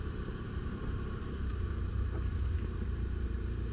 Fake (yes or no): yes